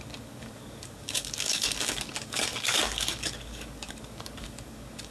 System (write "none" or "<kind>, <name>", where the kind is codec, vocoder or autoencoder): codec, DAC